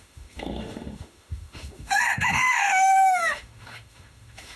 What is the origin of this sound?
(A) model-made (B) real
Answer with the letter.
A